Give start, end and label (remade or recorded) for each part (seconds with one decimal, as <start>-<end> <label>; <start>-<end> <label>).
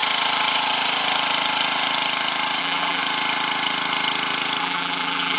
0.0-2.6 recorded; 2.6-3.0 remade; 3.0-4.6 recorded; 4.6-5.4 remade